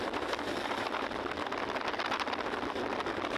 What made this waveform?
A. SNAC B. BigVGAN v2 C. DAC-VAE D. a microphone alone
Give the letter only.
D